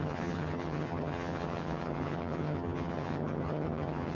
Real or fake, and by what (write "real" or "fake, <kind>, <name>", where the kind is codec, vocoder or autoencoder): fake, vocoder, HiFi-GAN